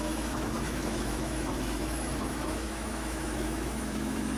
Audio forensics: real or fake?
fake